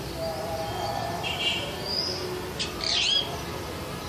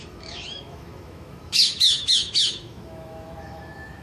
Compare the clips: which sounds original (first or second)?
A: first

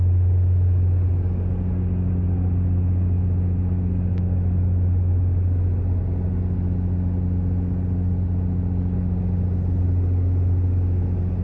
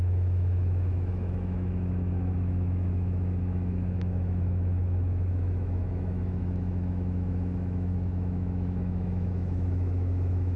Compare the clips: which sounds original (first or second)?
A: first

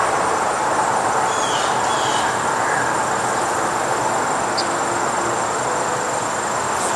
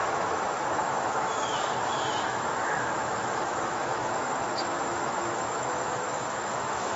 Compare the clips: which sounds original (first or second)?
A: first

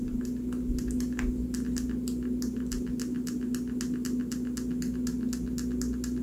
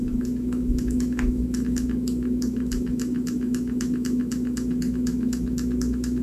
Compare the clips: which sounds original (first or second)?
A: first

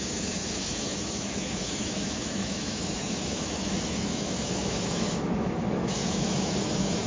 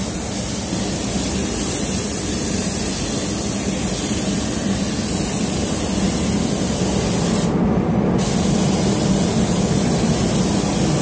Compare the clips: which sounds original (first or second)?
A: second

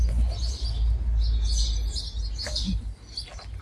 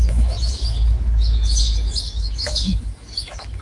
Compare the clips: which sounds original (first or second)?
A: first